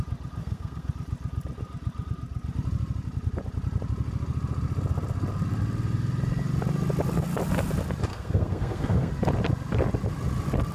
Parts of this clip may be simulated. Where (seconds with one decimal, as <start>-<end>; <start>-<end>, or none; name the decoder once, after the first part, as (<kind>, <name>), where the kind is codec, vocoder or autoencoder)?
0.4-0.9 (codec, SNAC); 8.1-9.1